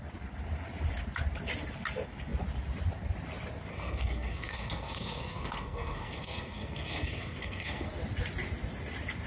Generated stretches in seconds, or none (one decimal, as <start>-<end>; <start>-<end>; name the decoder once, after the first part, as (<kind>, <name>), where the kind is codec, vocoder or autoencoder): 3.7-7.9 (codec, SNAC)